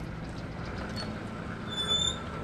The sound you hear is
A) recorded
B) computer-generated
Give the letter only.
A